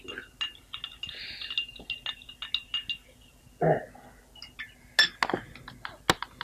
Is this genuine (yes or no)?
yes